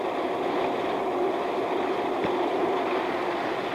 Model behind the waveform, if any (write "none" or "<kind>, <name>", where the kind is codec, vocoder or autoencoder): none